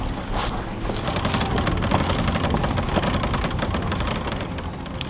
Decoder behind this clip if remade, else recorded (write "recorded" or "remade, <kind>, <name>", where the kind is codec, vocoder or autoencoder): recorded